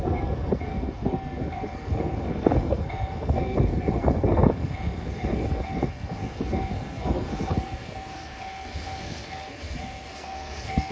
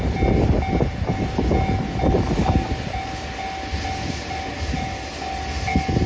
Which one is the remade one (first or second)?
first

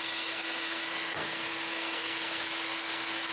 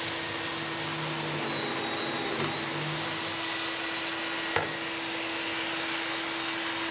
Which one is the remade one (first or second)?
first